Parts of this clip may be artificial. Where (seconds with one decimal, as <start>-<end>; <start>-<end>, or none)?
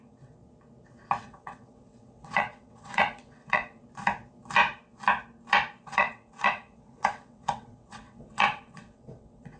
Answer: 0.0-0.4; 1.2-3.8; 5.8-9.6